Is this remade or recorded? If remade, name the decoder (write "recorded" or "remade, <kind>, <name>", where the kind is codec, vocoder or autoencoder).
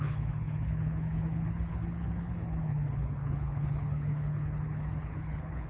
remade, codec, HILCodec